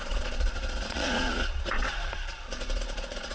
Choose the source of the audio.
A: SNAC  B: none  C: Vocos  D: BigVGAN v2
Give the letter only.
C